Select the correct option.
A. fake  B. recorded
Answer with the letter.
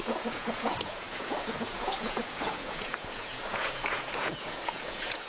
A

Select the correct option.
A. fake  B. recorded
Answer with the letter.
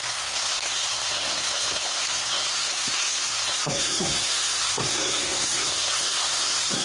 A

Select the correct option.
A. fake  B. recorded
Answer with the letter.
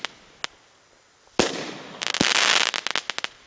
B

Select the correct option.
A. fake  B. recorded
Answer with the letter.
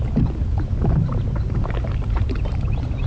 B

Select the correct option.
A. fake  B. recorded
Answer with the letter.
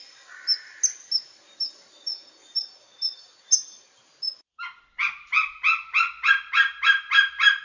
B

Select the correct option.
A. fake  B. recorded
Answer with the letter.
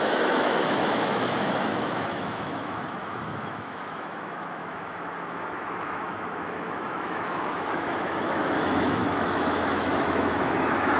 A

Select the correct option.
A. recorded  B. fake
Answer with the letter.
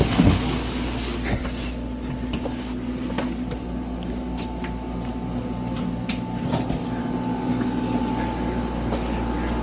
A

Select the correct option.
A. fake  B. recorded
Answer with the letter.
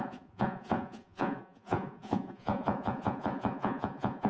A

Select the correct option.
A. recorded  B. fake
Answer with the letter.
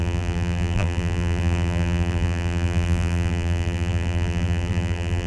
B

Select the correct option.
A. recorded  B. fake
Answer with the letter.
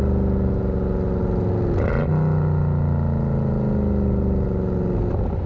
A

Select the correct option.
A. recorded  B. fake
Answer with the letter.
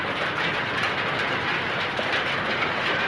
A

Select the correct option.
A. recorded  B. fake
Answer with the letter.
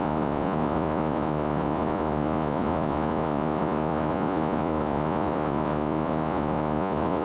B